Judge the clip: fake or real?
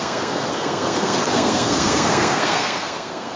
fake